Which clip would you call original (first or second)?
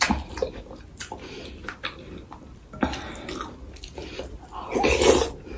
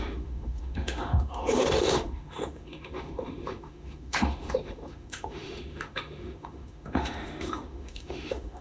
first